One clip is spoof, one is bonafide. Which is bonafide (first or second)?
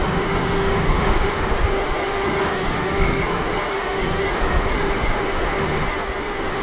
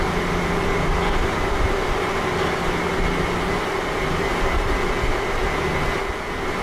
second